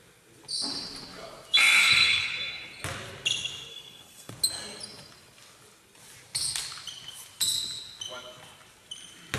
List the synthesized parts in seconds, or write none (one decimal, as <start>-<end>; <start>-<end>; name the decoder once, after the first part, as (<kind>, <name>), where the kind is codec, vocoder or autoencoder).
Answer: 1.8-2.3 (codec, SNAC); 3.7-4.3